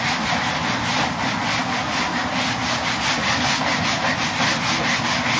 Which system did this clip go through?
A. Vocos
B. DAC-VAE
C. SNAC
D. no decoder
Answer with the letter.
D